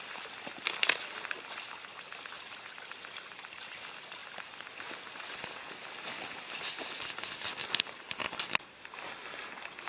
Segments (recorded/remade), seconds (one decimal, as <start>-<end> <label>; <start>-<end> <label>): 0.0-1.9 recorded; 1.9-2.7 remade; 2.7-7.6 recorded; 7.6-8.8 remade; 8.8-9.9 recorded